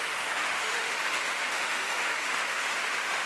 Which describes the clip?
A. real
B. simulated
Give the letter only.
B